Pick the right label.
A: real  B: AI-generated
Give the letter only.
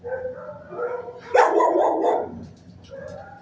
A